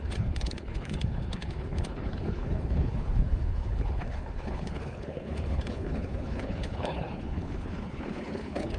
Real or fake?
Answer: fake